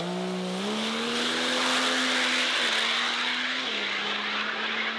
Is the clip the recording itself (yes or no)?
yes